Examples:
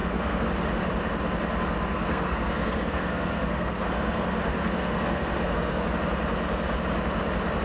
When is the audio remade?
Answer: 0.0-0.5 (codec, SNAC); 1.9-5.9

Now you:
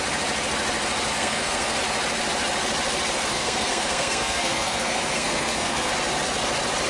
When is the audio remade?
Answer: 1.1-1.8 (codec, SNAC); 3.3-5.9

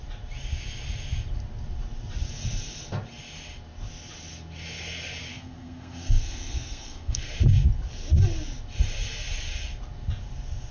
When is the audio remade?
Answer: 5.3-7.3 (codec, SNAC)

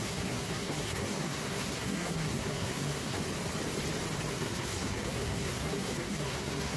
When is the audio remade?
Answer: 0.0-3.2 (codec, SNAC); 4.3-6.8